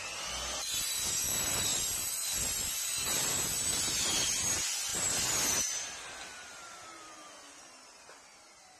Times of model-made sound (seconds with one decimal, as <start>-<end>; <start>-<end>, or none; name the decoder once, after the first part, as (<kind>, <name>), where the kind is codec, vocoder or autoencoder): none